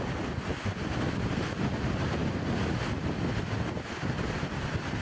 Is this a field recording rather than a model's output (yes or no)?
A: yes